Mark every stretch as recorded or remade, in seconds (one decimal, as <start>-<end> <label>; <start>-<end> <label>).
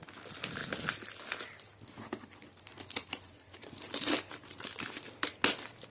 0.0-5.9 recorded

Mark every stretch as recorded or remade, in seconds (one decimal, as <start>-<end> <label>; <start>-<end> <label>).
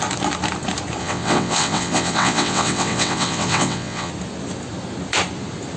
0.0-1.0 recorded; 1.0-4.1 remade; 4.1-5.8 recorded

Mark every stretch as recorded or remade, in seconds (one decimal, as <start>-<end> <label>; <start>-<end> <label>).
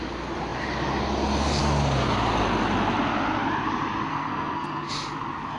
0.0-4.1 recorded; 4.1-4.9 remade; 4.9-5.6 recorded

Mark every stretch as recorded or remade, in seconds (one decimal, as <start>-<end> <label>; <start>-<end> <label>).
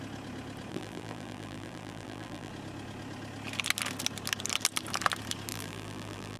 0.0-0.7 recorded; 0.7-2.5 remade; 2.5-5.5 recorded; 5.5-6.4 remade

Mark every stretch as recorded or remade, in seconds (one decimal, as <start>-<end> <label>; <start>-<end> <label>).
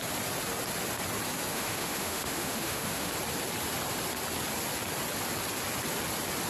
0.0-1.5 recorded; 1.5-3.1 remade; 3.1-6.5 recorded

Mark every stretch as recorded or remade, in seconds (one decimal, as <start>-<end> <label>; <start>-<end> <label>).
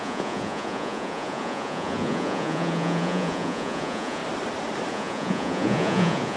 0.0-4.2 remade; 4.2-4.9 recorded; 4.9-6.4 remade